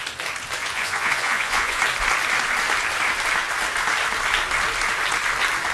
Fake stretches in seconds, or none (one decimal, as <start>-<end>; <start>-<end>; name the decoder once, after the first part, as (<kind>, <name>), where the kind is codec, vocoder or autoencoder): 0.6-1.8 (vocoder, Vocos)